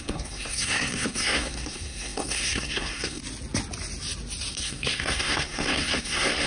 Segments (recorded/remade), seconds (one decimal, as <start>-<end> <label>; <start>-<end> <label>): 0.0-3.2 remade; 3.2-4.5 recorded; 4.5-6.5 remade